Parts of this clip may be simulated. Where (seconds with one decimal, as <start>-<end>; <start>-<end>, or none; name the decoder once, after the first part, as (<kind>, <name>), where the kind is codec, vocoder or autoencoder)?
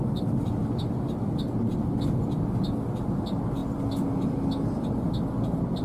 none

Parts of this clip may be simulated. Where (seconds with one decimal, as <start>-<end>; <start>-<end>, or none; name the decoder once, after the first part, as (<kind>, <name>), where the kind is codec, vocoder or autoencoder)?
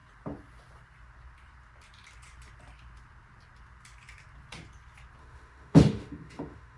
5.2-6.8 (autoencoder, DAC-VAE)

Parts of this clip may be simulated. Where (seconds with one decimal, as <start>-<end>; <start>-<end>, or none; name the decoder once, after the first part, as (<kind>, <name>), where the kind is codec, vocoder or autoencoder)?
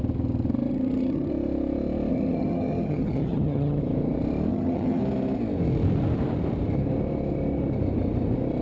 0.7-1.3 (vocoder, HiFi-GAN); 2.1-3.8; 4.5-5.0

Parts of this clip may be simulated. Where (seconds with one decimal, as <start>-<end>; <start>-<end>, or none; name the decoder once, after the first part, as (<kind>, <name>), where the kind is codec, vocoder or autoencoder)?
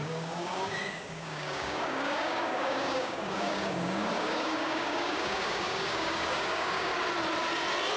0.0-6.9 (codec, DAC)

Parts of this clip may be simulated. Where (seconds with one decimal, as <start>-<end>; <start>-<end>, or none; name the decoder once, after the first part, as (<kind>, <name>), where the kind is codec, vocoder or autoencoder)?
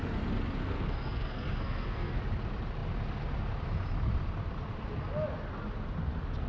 0.6-2.2 (codec, SNAC)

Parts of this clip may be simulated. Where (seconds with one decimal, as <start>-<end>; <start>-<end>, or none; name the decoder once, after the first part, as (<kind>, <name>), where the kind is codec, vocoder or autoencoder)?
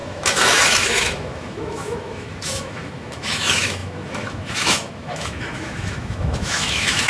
0.0-7.1 (autoencoder, DAC-VAE)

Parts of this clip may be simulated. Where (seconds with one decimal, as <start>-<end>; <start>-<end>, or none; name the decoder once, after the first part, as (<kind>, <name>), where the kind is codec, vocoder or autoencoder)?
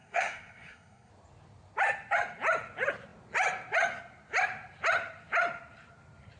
0.0-1.1 (codec, SNAC)